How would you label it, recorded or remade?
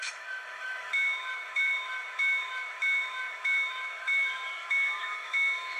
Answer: remade